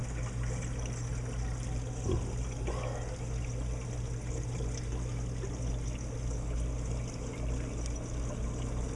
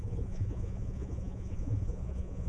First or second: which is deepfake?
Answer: second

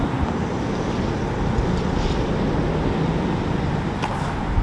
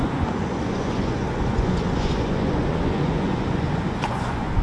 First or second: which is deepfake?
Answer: second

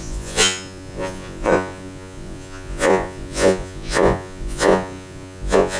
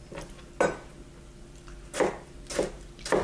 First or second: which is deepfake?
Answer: first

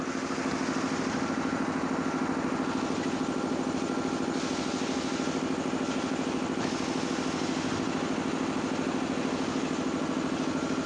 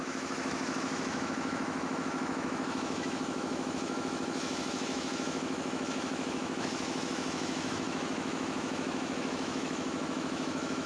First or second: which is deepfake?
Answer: second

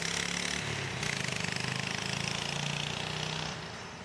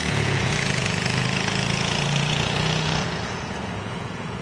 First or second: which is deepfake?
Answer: second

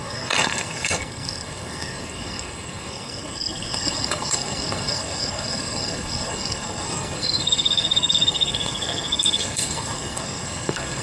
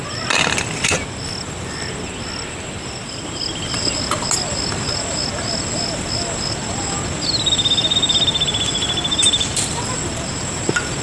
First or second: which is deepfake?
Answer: first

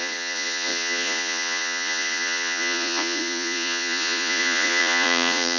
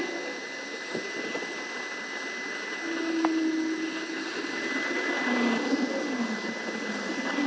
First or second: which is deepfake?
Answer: first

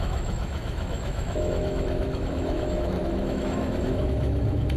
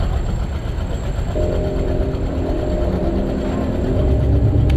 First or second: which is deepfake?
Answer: first